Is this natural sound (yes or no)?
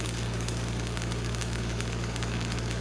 no